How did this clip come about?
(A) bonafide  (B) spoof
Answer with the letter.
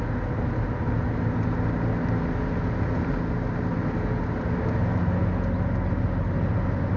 A